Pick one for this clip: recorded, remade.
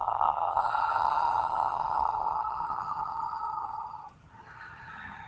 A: remade